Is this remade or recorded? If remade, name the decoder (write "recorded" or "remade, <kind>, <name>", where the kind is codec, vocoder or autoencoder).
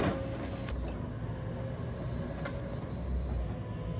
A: recorded